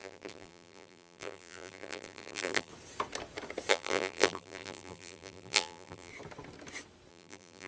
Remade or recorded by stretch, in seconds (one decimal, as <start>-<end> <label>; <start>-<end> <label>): 0.0-2.7 remade; 2.7-3.7 recorded; 3.7-6.1 remade; 6.1-7.1 recorded; 7.1-7.7 remade